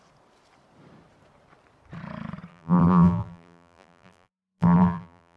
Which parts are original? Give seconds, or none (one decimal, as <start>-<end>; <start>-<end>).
0.0-2.5